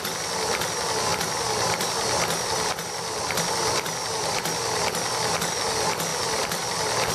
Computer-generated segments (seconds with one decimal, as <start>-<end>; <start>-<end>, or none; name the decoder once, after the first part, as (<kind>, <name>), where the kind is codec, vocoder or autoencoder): 6.1-7.1 (vocoder, BigVGAN v2)